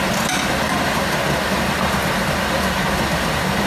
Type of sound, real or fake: real